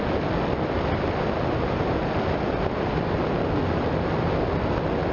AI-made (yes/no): no